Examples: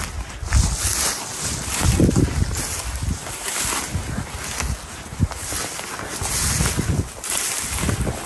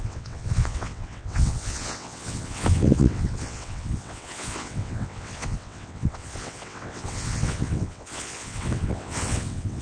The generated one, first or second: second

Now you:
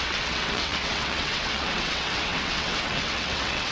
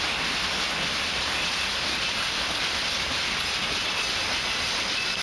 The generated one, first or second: first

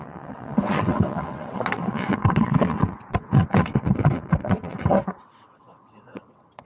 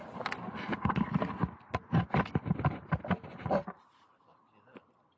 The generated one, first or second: first